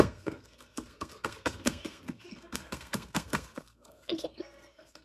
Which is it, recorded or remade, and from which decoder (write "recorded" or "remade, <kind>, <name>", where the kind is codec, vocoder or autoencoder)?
remade, codec, SNAC